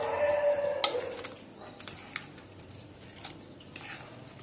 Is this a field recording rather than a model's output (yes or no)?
yes